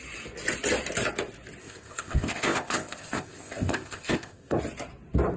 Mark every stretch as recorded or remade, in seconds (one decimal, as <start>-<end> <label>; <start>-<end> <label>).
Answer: 0.0-1.6 recorded; 1.6-4.6 remade; 4.6-5.4 recorded